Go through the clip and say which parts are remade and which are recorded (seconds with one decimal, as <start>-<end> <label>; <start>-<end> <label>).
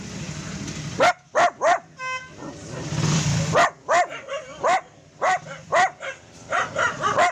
0.0-4.5 recorded; 4.5-5.7 remade; 5.7-7.3 recorded